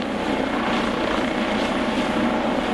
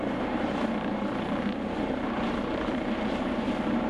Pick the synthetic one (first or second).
second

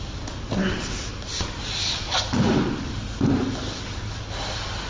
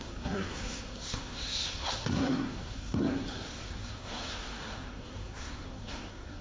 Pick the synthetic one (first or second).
second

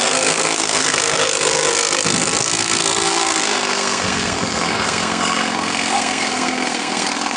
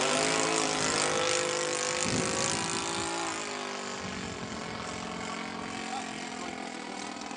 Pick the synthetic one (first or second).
first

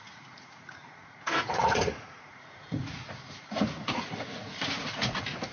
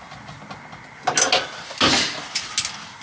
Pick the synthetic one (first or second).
first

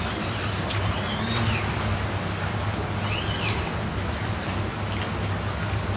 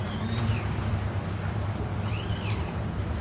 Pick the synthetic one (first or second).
second